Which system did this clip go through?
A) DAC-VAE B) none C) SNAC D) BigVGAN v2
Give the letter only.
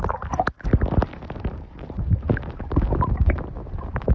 D